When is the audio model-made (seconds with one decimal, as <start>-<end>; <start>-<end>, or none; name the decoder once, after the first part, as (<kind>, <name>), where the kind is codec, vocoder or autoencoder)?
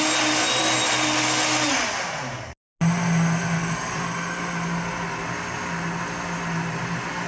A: none